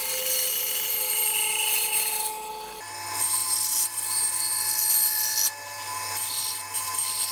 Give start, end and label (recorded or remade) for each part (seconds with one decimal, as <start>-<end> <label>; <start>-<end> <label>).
0.0-7.3 recorded